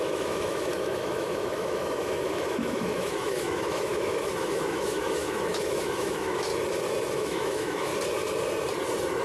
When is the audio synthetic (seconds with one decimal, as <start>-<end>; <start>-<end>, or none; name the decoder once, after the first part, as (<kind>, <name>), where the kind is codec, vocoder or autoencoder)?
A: 0.0-6.5 (autoencoder, DAC-VAE); 7.1-7.9